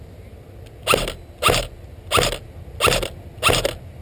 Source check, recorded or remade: recorded